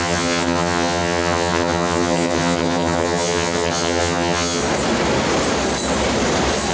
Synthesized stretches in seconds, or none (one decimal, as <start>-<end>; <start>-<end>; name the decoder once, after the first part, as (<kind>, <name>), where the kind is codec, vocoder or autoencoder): 0.0-4.6 (vocoder, HiFi-GAN)